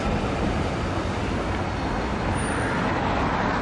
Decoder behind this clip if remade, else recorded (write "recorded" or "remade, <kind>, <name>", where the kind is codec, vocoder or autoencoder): recorded